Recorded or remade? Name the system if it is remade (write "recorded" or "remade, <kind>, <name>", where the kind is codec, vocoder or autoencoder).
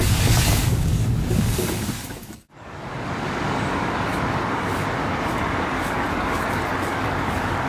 remade, codec, DAC